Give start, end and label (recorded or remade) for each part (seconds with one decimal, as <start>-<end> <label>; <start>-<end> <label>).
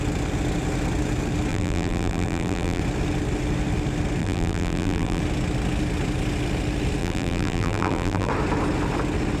0.0-1.5 recorded; 1.5-2.8 remade; 2.8-4.2 recorded; 4.2-5.2 remade; 5.2-7.0 recorded; 7.0-8.3 remade; 8.3-9.4 recorded